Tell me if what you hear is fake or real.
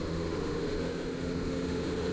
fake